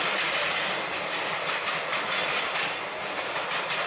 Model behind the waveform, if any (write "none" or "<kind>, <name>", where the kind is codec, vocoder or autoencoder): none